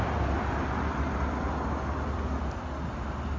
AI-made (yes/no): no